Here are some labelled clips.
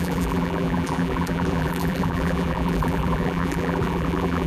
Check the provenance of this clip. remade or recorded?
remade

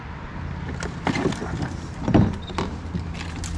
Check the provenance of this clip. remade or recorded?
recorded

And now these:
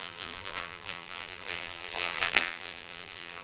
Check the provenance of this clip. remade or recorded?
remade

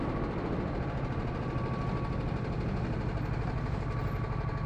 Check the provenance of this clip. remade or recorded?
recorded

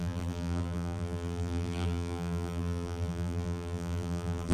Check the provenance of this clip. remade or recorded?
remade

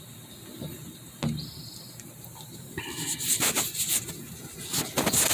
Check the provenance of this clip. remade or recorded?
recorded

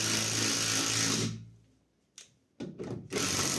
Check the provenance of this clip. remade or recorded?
recorded